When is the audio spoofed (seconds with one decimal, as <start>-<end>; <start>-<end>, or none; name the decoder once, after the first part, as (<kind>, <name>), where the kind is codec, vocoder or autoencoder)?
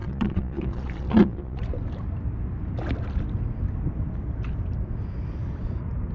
0.0-1.6 (vocoder, Vocos)